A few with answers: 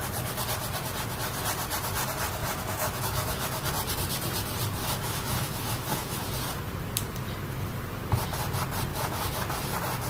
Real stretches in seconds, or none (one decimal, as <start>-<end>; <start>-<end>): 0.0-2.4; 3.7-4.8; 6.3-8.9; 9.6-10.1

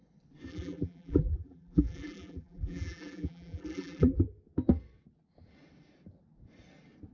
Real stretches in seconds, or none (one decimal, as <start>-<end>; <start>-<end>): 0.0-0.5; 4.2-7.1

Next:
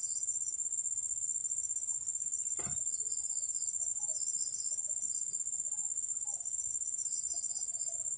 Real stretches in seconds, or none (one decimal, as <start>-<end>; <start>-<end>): 0.0-8.2

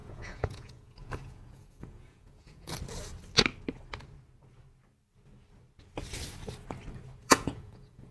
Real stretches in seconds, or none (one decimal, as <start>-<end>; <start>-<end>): 2.8-7.2

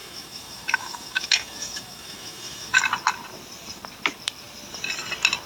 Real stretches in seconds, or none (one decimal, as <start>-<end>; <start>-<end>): 2.8-5.5

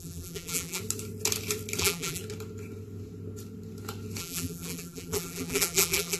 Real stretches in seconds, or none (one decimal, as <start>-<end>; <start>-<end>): 0.8-1.8; 2.2-4.2